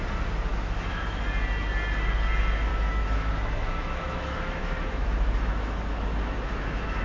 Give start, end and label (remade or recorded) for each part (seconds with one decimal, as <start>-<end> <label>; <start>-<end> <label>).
0.0-0.5 recorded; 0.5-1.2 remade; 1.2-2.7 recorded; 2.7-7.0 remade